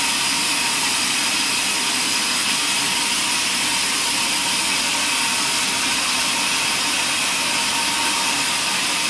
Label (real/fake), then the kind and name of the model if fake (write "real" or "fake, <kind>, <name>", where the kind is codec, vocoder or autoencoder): real